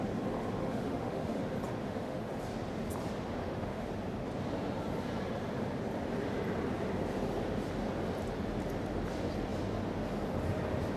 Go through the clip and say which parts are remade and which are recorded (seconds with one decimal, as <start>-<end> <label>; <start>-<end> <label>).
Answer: 0.0-0.6 recorded; 0.6-1.4 remade; 1.4-1.8 recorded; 1.8-2.3 remade; 2.3-3.4 recorded; 3.4-3.9 remade; 3.9-11.0 recorded

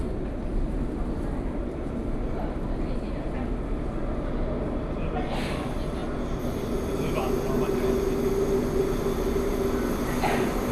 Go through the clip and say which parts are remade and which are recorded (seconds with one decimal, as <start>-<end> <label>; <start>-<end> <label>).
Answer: 0.0-10.7 recorded

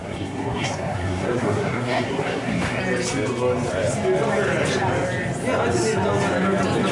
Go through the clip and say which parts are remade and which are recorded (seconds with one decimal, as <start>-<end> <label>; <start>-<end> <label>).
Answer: 0.0-2.8 remade; 2.8-6.9 recorded